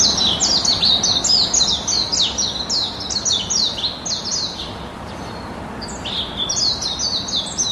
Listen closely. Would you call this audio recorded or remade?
recorded